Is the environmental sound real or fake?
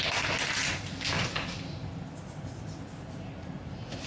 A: real